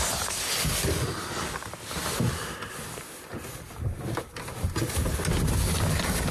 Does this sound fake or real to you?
real